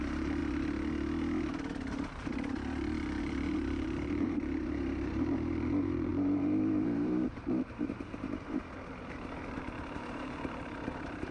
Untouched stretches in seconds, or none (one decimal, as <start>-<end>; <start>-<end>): 0.4-3.2